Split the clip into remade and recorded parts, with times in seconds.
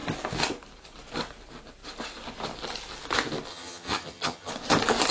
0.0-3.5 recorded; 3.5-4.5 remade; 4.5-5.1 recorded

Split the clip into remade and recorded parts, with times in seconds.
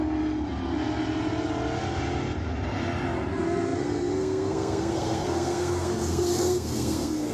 0.0-3.3 recorded; 3.3-7.3 remade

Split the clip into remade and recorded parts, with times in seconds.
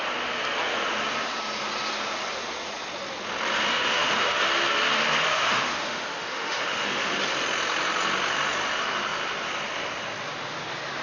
0.0-3.7 recorded; 3.7-4.4 remade; 4.4-5.3 recorded; 5.3-7.2 remade; 7.2-11.0 recorded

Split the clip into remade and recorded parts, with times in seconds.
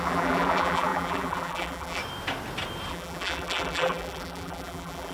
0.0-2.0 remade; 2.0-2.9 recorded; 2.9-5.1 remade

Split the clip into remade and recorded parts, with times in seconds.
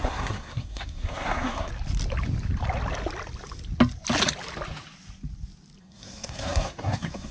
0.0-1.7 remade; 1.7-5.8 recorded; 5.8-7.3 remade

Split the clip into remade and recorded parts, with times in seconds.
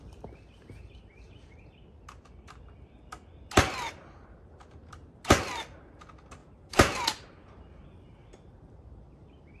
0.0-6.4 recorded; 6.4-9.6 remade